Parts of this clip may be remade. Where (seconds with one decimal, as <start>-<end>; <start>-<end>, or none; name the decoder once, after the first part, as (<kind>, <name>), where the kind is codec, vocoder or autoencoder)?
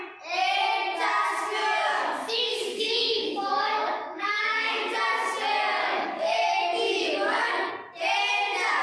1.6-4.7 (codec, DAC); 5.8-7.7